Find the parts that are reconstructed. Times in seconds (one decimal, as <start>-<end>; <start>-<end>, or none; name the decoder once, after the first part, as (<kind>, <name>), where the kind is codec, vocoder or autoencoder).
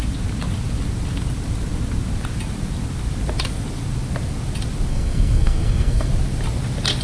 4.9-6.1 (codec, SNAC)